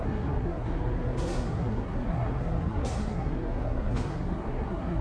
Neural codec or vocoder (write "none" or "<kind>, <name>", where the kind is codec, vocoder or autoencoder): codec, SNAC